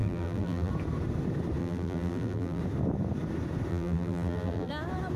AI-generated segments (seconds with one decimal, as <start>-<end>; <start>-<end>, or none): 0.0-0.7; 1.6-2.6; 3.7-4.7